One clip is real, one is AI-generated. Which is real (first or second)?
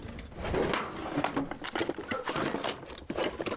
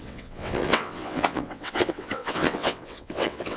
first